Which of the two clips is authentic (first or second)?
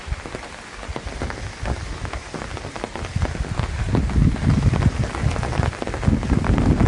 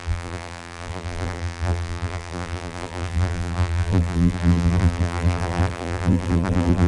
first